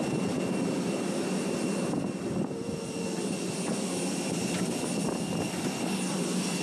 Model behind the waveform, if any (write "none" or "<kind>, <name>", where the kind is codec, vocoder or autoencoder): none